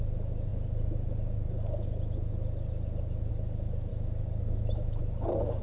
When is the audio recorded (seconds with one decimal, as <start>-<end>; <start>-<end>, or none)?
0.0-3.9; 5.0-5.6